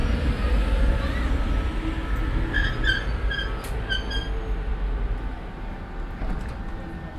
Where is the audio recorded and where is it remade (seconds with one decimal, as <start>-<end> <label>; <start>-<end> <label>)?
0.0-4.7 recorded; 4.7-5.3 remade; 5.3-7.2 recorded